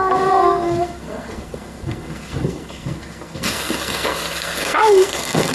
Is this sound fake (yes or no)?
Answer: yes